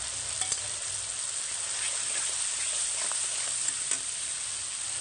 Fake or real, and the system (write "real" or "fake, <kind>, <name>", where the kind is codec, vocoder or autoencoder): real